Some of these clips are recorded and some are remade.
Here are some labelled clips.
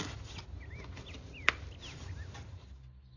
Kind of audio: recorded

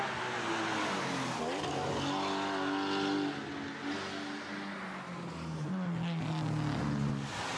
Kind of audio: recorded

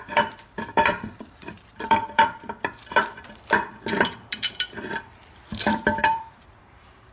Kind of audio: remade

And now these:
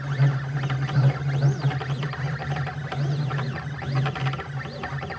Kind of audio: remade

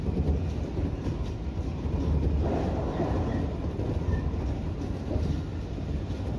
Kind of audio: recorded